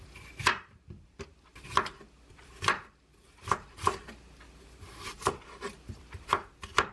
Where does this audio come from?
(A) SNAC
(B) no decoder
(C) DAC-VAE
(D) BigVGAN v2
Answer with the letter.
D